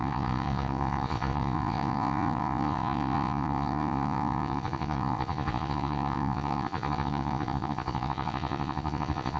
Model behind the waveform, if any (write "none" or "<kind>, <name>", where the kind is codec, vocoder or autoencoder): vocoder, Vocos